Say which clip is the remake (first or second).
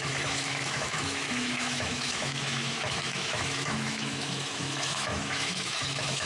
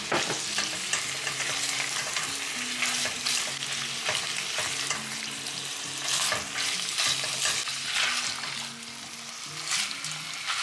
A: first